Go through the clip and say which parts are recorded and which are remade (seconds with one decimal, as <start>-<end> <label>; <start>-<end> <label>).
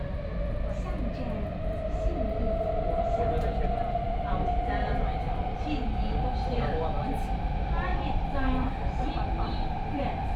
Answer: 0.0-7.9 recorded; 7.9-10.4 remade